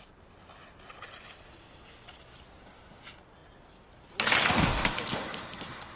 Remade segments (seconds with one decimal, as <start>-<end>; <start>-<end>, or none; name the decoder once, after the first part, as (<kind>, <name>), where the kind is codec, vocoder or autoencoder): none